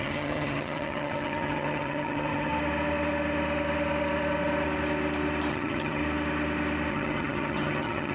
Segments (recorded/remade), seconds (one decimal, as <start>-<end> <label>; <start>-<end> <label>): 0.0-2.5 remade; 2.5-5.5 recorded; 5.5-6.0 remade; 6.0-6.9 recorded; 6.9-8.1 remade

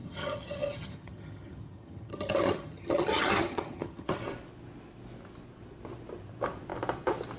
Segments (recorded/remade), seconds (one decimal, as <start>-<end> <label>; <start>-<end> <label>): 0.0-4.2 remade; 4.2-7.4 recorded

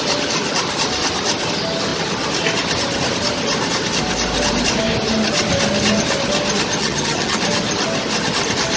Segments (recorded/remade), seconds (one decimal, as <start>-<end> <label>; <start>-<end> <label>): 0.0-6.8 recorded; 6.8-7.4 remade; 7.4-8.8 recorded